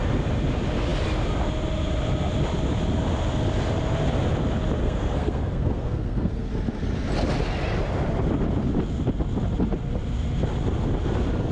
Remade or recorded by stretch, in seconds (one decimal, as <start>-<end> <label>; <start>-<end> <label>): 0.0-4.8 recorded; 4.8-6.5 remade; 6.5-11.5 recorded